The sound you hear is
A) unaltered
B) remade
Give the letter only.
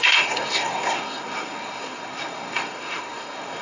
B